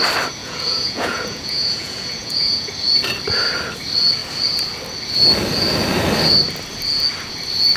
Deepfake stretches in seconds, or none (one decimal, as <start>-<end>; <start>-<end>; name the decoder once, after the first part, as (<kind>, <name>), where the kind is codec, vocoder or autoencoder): 0.4-2.7 (vocoder, Vocos)

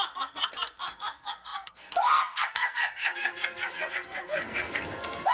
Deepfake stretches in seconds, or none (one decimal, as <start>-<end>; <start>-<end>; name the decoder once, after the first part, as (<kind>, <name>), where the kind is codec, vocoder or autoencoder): 0.0-5.3 (codec, SNAC)